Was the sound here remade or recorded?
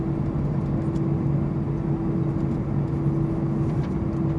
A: recorded